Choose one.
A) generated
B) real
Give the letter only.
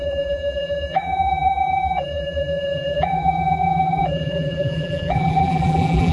A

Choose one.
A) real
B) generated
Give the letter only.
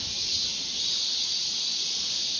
B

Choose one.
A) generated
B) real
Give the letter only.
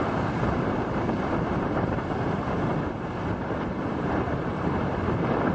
A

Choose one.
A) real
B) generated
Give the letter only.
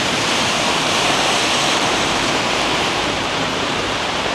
B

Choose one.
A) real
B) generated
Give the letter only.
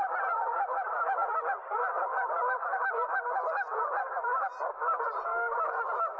B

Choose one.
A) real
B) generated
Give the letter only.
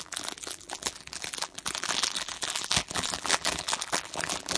B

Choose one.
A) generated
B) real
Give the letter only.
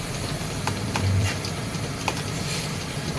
A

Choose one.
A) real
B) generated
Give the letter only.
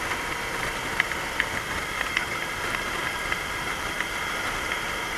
A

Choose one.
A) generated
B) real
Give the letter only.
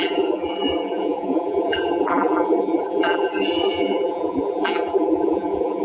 A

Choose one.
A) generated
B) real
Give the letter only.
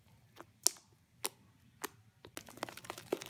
B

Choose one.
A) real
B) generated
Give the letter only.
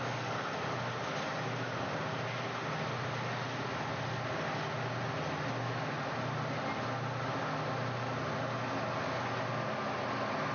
A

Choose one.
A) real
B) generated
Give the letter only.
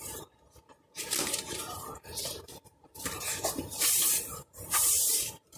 B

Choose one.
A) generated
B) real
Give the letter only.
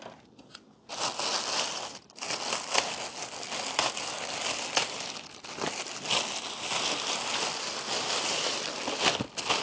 B